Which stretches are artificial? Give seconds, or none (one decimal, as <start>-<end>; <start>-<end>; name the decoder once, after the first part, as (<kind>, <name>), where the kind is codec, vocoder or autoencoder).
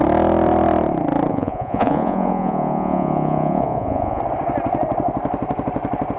1.3-4.2 (vocoder, Vocos)